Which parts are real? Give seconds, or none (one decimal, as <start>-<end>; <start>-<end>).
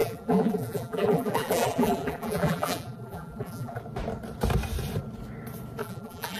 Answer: 3.8-5.8